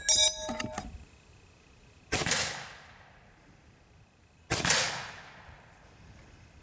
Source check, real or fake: real